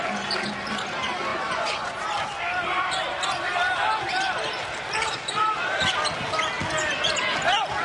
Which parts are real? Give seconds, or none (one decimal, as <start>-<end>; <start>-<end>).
0.0-1.3; 2.0-7.8